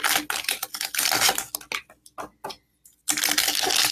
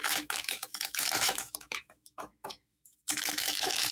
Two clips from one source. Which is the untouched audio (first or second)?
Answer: first